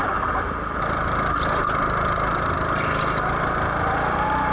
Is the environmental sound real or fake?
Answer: real